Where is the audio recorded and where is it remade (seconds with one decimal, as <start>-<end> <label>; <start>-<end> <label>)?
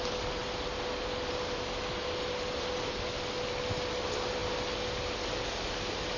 0.0-6.2 recorded